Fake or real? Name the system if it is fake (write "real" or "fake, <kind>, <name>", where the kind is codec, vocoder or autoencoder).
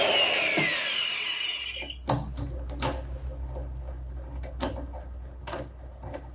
real